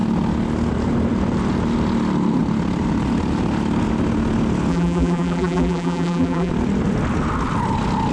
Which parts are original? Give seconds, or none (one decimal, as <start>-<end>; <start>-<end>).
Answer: 0.0-4.7; 6.5-8.1